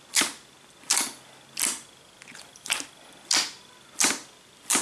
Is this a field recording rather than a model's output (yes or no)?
yes